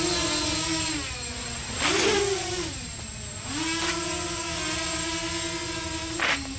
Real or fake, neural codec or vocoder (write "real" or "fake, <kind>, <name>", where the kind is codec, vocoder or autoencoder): real